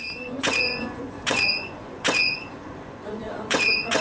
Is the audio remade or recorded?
remade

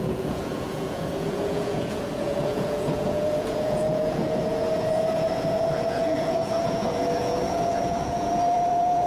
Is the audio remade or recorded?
remade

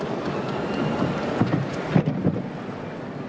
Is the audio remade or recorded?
recorded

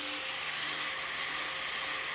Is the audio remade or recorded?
recorded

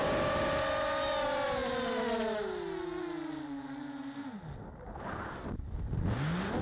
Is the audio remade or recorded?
recorded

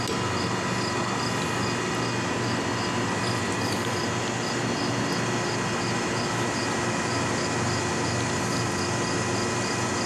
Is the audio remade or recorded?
recorded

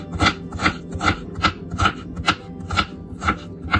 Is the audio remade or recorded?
recorded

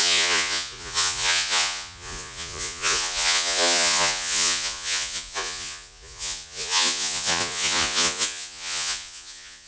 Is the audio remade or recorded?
remade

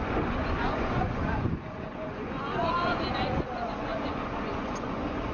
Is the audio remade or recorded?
remade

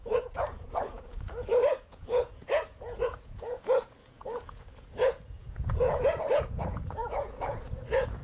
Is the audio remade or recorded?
remade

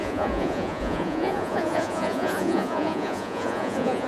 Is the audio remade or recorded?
remade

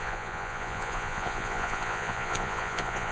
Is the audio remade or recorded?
remade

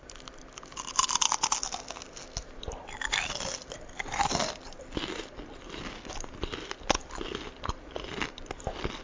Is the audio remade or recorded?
recorded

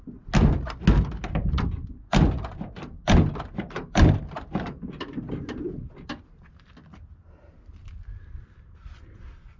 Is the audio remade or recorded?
recorded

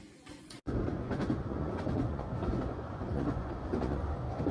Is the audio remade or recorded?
remade